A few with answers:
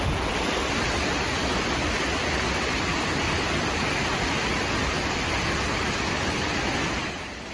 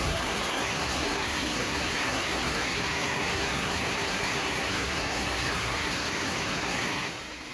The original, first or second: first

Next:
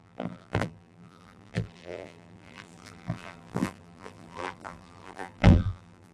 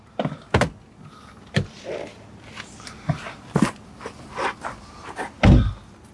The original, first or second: second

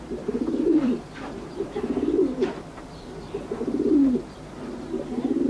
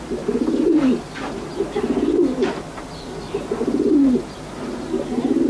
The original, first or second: second